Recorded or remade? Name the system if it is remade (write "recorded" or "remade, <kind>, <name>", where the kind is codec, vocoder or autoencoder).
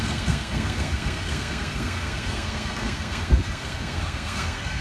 remade, codec, SNAC